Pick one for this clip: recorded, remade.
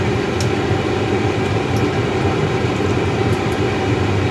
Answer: remade